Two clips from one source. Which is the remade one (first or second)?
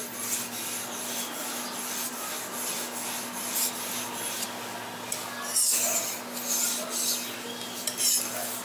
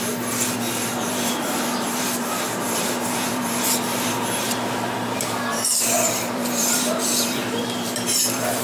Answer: second